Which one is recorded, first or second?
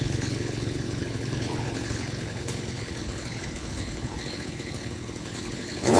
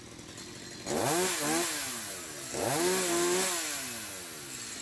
second